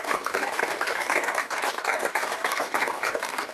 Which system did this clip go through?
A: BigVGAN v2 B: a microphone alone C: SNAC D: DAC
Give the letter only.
D